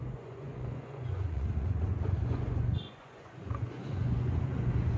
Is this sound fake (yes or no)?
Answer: yes